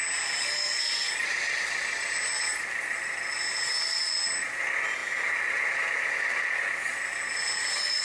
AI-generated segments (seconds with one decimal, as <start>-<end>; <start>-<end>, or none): none